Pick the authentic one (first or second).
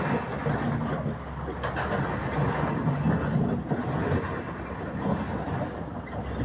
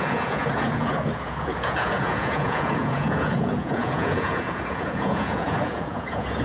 first